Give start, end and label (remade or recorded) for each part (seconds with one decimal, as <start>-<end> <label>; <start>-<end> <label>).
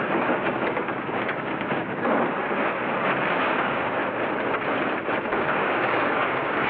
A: 0.0-2.4 remade; 2.4-3.2 recorded; 3.2-4.0 remade; 4.0-5.3 recorded; 5.3-6.7 remade